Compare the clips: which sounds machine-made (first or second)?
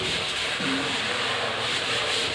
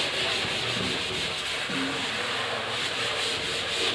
first